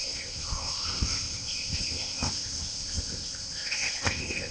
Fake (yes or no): yes